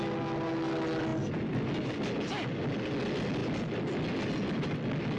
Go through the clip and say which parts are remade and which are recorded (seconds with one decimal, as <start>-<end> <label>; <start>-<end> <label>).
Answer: 0.0-5.2 recorded